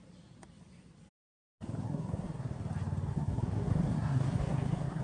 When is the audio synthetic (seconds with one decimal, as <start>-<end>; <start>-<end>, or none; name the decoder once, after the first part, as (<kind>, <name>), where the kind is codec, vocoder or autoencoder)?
1.8-2.6 (codec, SNAC); 3.1-5.0